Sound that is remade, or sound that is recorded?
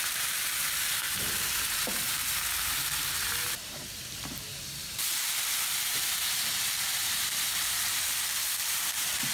remade